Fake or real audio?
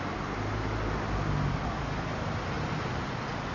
real